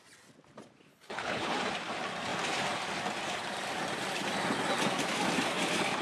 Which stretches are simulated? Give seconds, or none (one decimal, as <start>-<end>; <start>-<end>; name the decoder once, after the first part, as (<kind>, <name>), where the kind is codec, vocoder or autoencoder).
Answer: 0.9-1.6 (codec, HILCodec)